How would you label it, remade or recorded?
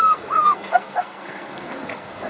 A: remade